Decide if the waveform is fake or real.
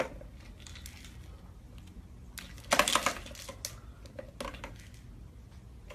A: real